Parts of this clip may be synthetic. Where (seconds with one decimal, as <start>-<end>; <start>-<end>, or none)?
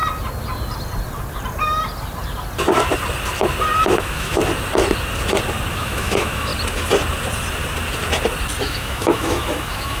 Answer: 4.0-4.4; 5.7-6.5; 8.6-10.0